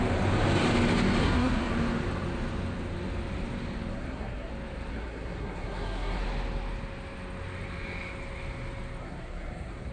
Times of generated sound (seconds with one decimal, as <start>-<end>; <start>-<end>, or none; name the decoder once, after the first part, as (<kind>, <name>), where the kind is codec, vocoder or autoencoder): 1.2-1.7 (codec, SNAC); 3.9-4.5; 4.9-6.2; 9.0-9.9